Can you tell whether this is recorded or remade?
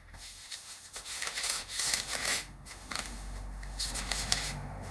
remade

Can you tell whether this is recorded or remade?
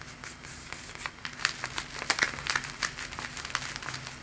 recorded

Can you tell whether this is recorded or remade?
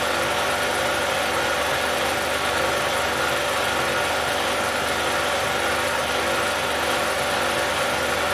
recorded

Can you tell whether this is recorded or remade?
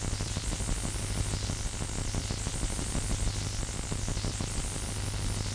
recorded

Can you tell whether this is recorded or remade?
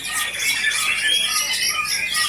recorded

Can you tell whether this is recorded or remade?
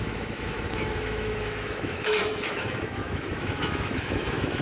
remade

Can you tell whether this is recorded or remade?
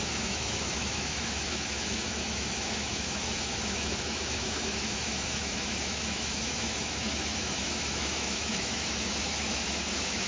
remade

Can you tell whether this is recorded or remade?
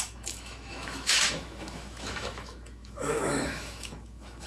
remade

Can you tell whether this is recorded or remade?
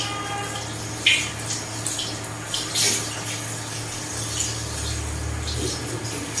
recorded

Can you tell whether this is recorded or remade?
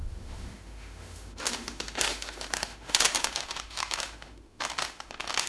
remade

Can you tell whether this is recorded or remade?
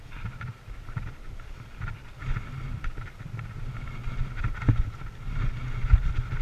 recorded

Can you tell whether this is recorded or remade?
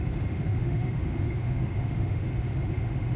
remade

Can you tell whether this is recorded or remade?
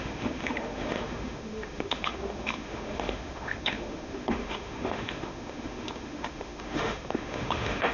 remade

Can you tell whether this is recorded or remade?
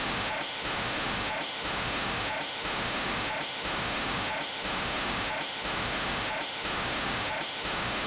remade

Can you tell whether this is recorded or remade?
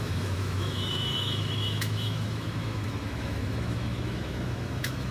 remade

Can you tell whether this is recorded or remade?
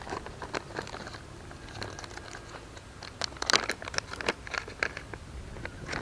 recorded